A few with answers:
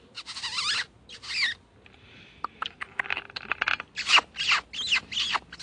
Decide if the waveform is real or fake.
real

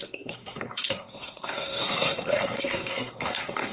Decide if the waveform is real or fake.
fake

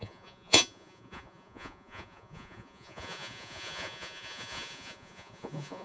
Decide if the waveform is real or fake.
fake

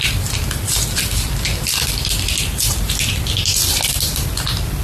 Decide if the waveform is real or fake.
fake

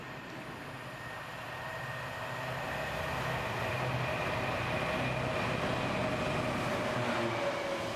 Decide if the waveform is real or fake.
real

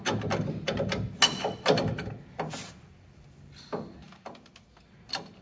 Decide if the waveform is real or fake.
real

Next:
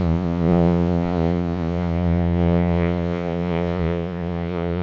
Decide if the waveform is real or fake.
fake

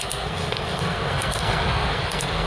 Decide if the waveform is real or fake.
fake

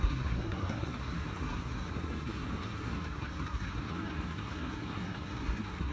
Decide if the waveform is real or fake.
fake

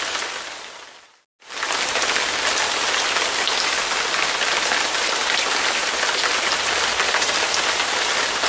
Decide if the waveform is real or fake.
real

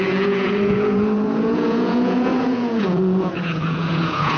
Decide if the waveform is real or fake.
fake